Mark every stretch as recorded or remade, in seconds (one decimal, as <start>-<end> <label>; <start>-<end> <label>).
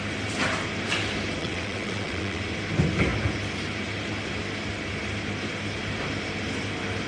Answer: 0.0-1.4 recorded; 1.4-2.4 remade; 2.4-7.1 recorded